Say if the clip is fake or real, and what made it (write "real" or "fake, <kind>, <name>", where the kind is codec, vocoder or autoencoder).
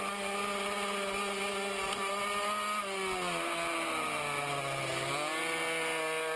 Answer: real